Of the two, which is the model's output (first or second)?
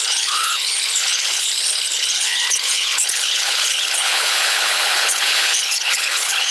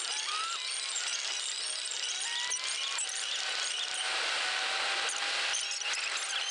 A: first